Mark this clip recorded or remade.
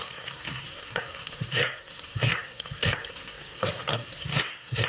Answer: remade